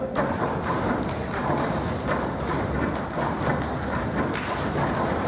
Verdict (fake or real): real